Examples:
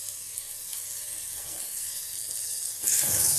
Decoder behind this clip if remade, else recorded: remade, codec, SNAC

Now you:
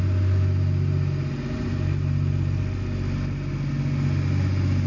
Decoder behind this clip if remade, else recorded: recorded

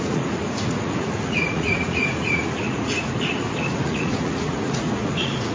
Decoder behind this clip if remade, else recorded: remade, vocoder, Vocos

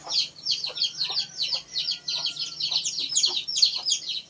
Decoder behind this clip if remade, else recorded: recorded